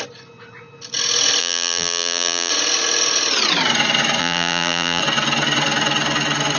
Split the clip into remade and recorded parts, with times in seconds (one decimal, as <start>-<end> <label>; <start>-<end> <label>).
0.0-1.4 recorded; 1.4-2.5 remade; 2.5-4.2 recorded; 4.2-5.0 remade; 5.0-6.6 recorded